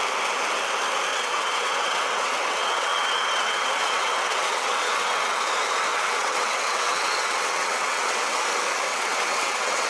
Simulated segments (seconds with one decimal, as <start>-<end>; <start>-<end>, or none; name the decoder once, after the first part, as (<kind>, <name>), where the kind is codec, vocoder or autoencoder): 1.1-5.4 (vocoder, WaveNeXt); 5.9-8.4; 8.9-9.9